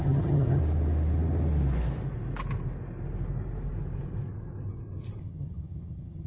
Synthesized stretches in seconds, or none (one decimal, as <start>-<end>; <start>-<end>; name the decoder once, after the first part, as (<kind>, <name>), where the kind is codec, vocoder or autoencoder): 0.0-0.6 (vocoder, HiFi-GAN); 5.2-6.3